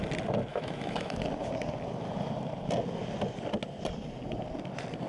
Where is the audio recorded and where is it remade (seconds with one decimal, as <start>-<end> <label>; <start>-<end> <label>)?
0.0-0.5 recorded; 0.5-1.2 remade; 1.2-5.1 recorded